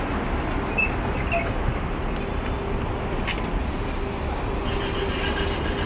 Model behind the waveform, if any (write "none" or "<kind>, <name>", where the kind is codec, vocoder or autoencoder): none